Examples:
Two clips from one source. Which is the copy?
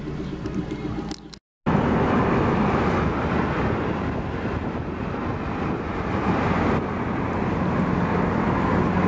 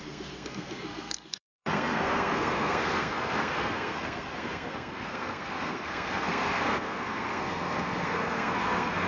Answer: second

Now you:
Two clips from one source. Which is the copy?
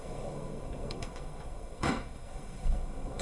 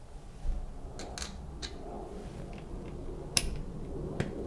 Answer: first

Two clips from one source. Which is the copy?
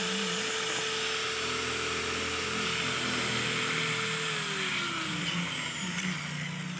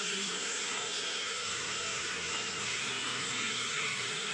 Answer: second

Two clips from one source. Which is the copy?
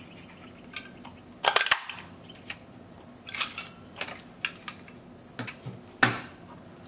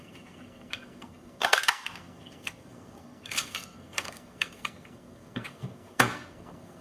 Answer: second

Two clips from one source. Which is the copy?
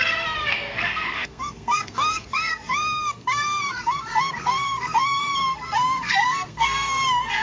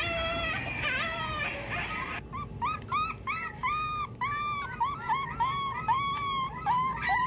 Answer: first